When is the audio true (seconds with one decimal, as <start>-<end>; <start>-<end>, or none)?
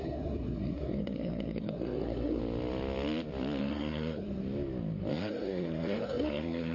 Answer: 2.4-3.6; 4.4-5.1